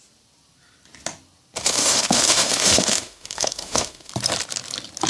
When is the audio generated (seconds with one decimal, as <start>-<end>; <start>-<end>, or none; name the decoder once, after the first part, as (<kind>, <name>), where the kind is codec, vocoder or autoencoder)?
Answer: 1.6-4.1 (autoencoder, DAC-VAE)